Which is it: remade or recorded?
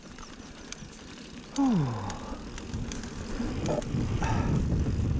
recorded